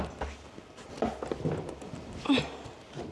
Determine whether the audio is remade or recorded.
recorded